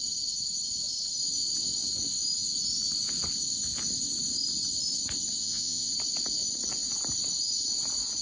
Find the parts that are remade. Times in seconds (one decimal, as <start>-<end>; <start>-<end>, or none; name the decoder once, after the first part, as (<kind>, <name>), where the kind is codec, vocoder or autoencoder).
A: 5.4-5.9 (vocoder, Vocos)

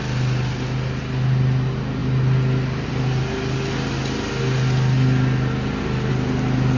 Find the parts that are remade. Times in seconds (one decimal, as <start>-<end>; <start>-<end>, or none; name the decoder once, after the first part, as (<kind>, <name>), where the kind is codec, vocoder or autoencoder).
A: none

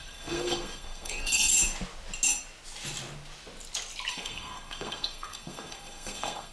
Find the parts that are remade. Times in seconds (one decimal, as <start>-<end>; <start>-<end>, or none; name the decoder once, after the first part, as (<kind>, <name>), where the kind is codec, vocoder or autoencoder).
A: 0.0-1.5 (codec, SNAC); 4.1-6.5

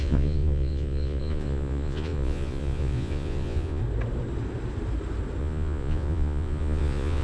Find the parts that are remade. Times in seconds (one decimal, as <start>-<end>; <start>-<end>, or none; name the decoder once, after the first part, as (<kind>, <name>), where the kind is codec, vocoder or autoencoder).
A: 0.0-3.8 (vocoder, Vocos); 5.4-7.2

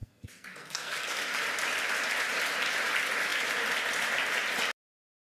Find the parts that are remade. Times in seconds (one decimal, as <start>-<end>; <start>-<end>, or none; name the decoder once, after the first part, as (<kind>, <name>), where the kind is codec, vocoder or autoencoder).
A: 0.0-1.4 (codec, SNAC)